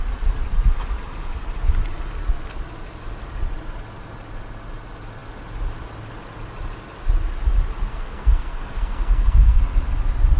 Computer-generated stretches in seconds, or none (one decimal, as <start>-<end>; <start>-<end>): 7.9-9.6

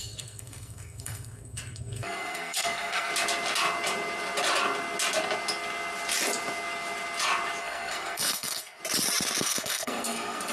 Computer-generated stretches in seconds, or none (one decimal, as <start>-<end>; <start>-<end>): 0.0-3.1; 7.6-8.8; 9.4-10.5

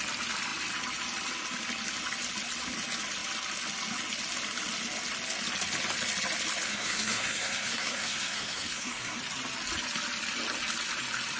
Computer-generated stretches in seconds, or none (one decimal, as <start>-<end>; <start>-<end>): 6.7-9.2

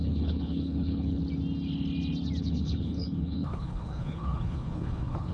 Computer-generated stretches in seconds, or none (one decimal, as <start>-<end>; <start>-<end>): 0.0-1.2; 2.4-5.3